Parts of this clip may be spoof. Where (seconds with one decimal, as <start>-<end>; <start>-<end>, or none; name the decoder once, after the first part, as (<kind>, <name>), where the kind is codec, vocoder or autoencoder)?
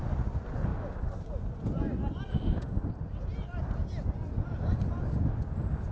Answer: 2.3-2.9 (autoencoder, DAC-VAE)